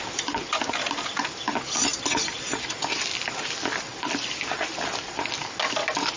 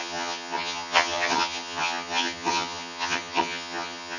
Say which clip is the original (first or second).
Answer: first